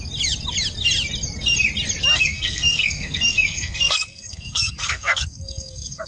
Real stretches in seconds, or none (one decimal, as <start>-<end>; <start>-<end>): 0.0-2.1

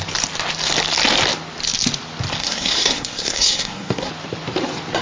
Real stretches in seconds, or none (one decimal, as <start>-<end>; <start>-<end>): 0.0-2.4; 4.1-5.0

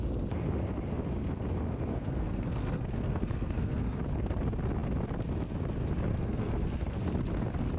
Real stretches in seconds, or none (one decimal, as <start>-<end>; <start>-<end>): 0.0-1.9; 4.0-6.1; 7.0-7.8

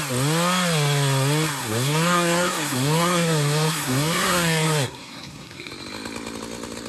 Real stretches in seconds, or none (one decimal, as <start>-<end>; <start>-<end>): 0.0-1.6; 5.7-6.9

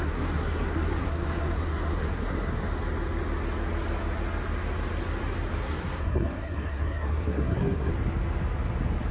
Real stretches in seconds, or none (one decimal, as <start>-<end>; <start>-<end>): 2.4-5.6; 7.9-9.1